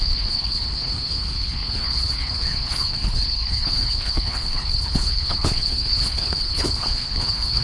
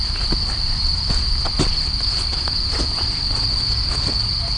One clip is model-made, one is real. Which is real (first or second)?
second